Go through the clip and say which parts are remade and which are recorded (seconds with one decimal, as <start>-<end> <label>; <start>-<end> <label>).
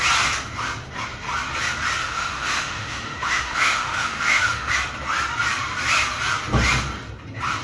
0.0-2.0 recorded; 2.0-4.7 remade; 4.7-7.6 recorded